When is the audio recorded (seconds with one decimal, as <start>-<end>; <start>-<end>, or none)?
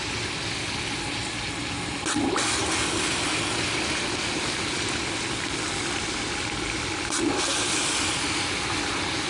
0.0-9.3